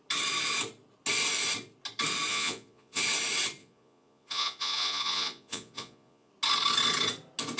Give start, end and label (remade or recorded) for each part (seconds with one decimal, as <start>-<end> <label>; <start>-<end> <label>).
0.0-2.3 recorded; 2.3-3.0 remade; 3.0-3.6 recorded; 3.6-6.3 remade; 6.3-7.6 recorded